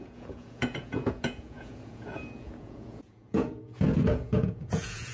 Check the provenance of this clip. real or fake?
fake